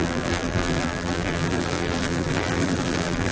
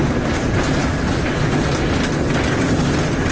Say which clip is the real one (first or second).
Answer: second